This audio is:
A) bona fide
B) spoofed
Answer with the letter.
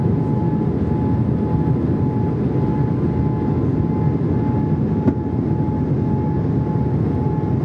A